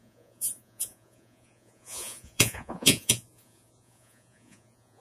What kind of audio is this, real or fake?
fake